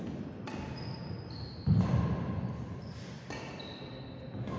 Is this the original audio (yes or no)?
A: yes